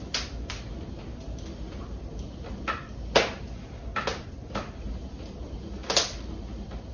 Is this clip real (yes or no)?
yes